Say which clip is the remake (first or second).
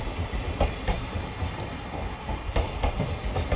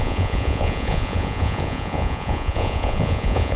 second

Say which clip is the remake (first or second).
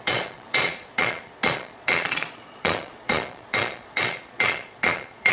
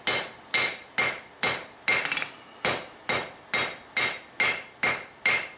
first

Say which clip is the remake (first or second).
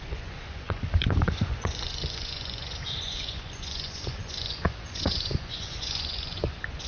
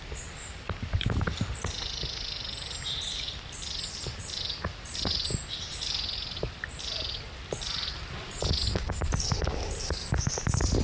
first